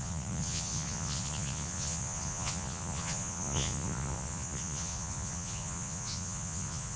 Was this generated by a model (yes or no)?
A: yes